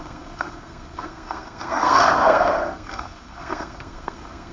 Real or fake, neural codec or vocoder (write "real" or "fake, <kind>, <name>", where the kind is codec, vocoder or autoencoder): fake, codec, SNAC